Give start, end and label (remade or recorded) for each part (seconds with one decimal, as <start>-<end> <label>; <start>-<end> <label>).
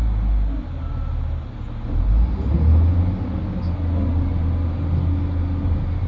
0.0-6.1 recorded